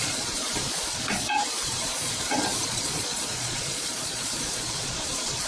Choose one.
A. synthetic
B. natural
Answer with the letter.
A